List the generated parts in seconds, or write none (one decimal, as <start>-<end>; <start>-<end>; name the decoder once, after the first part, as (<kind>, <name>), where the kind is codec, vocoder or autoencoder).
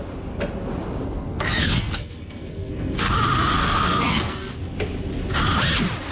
1.0-3.1 (codec, SNAC); 3.6-4.5